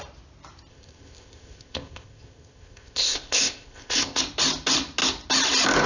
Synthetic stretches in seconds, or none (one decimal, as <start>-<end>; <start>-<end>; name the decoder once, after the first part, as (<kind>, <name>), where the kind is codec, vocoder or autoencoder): 0.7-4.2 (codec, ZipCodec)